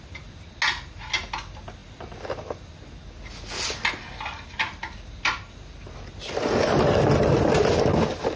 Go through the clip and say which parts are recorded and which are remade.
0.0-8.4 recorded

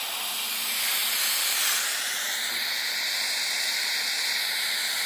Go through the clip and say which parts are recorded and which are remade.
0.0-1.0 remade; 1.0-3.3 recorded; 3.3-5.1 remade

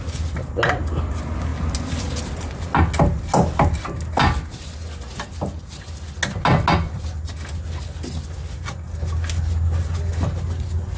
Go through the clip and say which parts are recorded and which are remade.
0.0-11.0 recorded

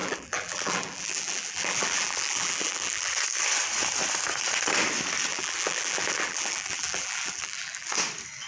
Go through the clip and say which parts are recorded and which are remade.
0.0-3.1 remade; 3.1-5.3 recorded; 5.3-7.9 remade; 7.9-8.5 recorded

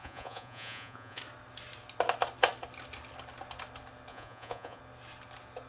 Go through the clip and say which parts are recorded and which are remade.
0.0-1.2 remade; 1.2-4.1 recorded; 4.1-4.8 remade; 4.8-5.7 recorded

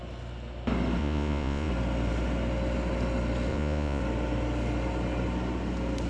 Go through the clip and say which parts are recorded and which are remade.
0.0-1.0 recorded; 1.0-1.7 remade; 1.7-3.5 recorded; 3.5-4.0 remade; 4.0-6.1 recorded